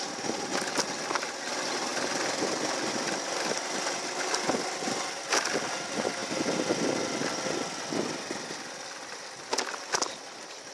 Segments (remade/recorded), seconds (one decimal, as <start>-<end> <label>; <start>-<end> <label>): 0.0-10.7 recorded

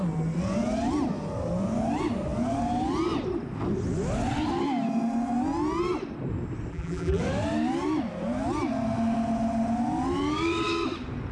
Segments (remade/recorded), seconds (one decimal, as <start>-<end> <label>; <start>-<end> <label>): 0.0-6.7 recorded; 6.7-7.2 remade; 7.2-11.3 recorded

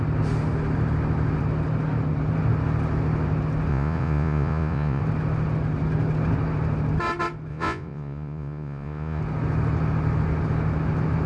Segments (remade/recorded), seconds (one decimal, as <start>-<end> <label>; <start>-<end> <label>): 0.0-3.7 recorded; 3.7-5.0 remade; 5.0-7.5 recorded; 7.5-9.2 remade; 9.2-11.3 recorded

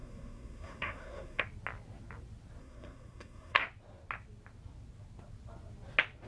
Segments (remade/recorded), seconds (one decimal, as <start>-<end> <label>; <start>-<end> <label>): 0.0-1.4 remade; 1.4-2.6 recorded; 2.6-3.6 remade; 3.6-6.3 recorded

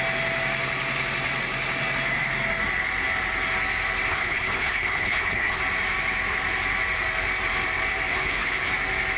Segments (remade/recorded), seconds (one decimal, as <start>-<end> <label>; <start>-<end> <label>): 0.0-4.1 recorded; 4.1-5.6 remade; 5.6-8.1 recorded; 8.1-8.7 remade; 8.7-9.2 recorded

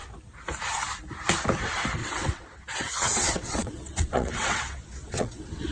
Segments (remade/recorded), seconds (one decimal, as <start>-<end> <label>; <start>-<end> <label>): 0.0-2.0 recorded; 2.0-5.7 remade